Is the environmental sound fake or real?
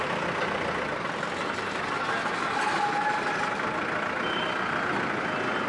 real